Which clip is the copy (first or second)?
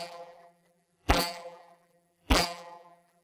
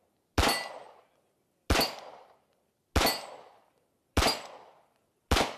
first